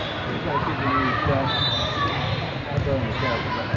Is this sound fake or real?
real